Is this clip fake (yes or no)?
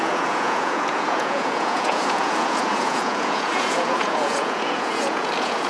yes